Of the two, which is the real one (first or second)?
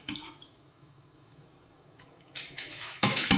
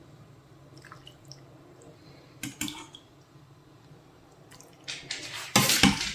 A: second